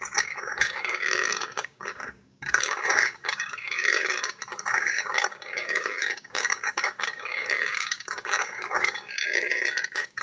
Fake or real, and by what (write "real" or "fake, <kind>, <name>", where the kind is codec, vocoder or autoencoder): fake, codec, DAC